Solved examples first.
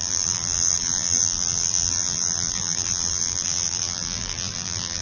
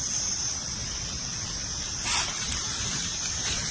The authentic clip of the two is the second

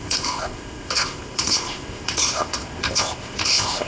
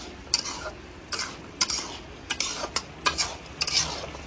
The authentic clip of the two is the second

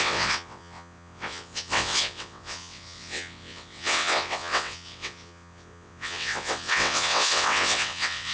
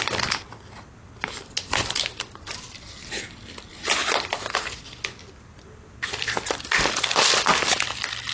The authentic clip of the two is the second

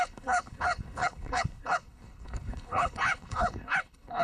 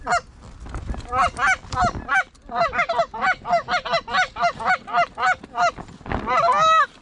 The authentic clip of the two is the second